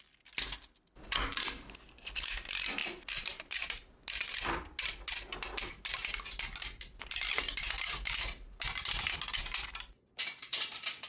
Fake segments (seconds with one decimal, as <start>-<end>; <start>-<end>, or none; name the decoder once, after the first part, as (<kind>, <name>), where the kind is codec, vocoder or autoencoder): none

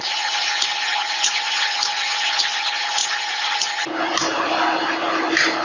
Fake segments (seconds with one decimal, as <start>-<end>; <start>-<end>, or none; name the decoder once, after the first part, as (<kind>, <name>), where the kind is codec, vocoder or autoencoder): none

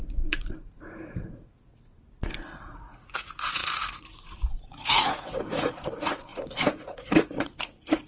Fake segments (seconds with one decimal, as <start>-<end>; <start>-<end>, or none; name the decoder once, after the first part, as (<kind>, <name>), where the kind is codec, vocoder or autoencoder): 0.0-1.7 (vocoder, Vocos); 2.6-8.1